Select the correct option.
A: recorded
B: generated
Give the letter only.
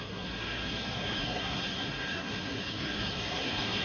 B